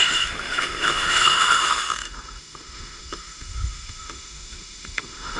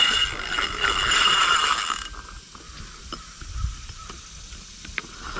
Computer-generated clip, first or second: first